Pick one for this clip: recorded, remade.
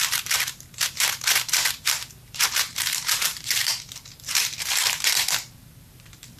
remade